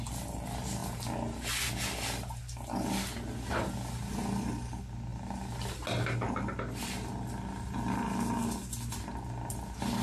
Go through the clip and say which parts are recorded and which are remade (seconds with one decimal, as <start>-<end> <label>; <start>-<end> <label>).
0.0-10.0 recorded